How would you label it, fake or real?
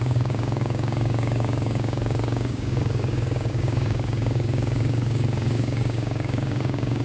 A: fake